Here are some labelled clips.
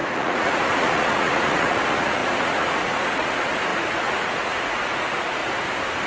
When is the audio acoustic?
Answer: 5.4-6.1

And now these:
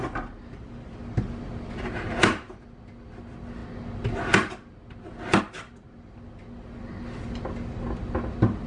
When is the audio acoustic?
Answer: 0.0-8.7

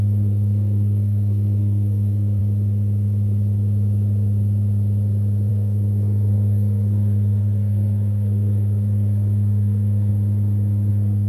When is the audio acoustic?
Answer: 2.4-5.5; 10.1-10.9